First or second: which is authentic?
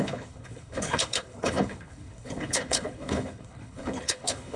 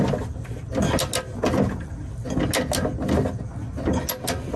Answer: second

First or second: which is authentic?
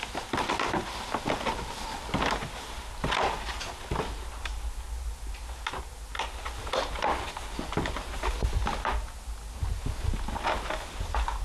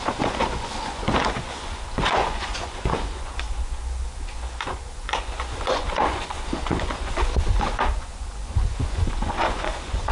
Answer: first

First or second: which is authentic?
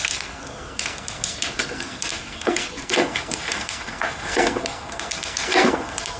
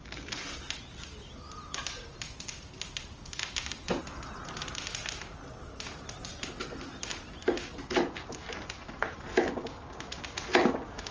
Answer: second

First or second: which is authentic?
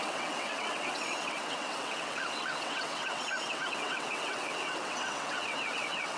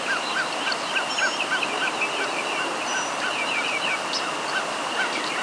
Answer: second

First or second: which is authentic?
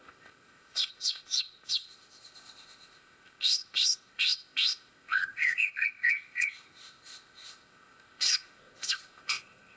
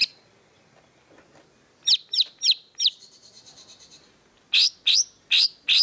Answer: second